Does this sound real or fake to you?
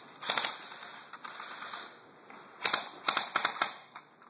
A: real